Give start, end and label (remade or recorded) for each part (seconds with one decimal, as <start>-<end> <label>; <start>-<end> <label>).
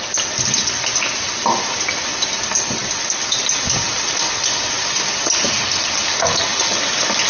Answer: 0.0-7.3 recorded